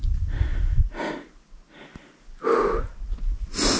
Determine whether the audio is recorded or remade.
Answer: recorded